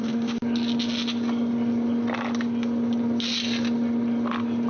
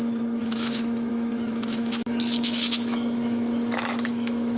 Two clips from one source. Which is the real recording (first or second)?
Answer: first